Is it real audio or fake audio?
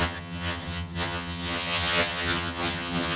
fake